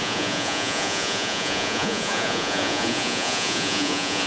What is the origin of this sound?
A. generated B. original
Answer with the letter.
A